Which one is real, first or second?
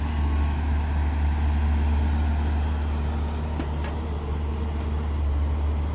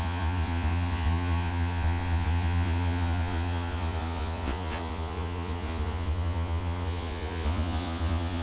first